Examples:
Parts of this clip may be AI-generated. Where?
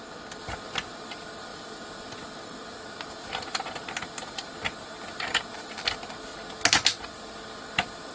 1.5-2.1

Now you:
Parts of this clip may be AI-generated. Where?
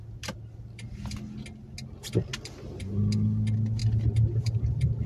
none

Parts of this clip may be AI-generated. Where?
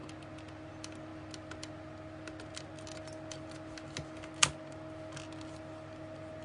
none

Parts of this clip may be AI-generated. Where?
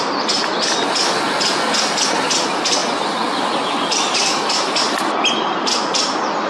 none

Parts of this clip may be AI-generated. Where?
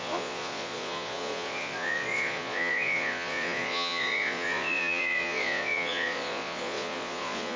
0.0-7.6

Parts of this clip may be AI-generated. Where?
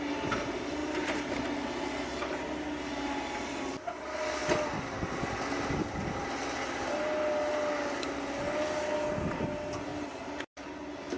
none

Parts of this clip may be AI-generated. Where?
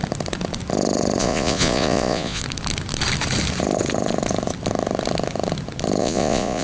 1.2-2.4; 6.0-6.6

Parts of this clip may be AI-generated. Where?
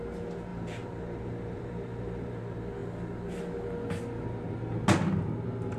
0.5-2.4